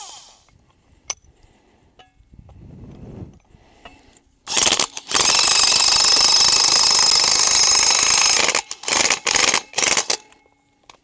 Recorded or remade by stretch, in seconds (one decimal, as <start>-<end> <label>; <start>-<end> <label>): 0.0-11.0 recorded